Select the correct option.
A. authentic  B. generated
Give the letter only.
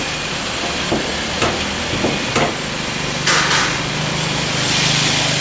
A